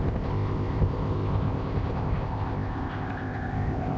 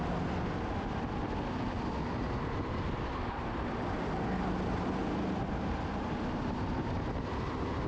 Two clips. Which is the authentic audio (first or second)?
second